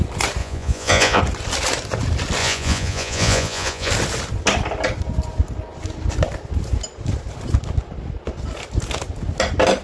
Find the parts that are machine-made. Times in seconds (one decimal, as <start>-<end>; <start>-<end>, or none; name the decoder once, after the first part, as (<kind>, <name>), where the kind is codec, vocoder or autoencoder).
0.4-1.2 (vocoder, Vocos); 2.4-3.9